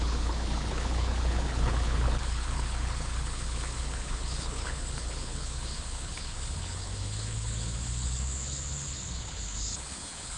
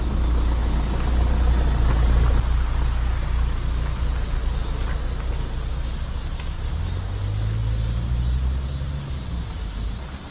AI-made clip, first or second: first